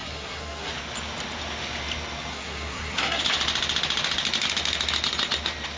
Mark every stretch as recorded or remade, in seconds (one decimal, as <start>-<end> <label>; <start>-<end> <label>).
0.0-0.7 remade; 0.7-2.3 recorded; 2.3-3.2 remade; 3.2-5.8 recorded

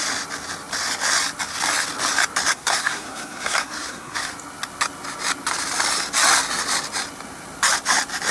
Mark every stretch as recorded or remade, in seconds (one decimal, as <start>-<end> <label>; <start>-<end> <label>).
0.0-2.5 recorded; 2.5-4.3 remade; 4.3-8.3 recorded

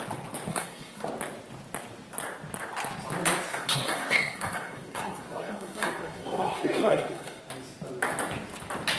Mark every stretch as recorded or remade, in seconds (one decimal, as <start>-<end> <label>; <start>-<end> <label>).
0.0-0.5 recorded; 0.5-1.1 remade; 1.1-3.5 recorded; 3.5-7.4 remade; 7.4-9.0 recorded